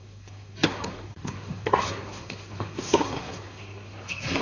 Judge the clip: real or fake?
fake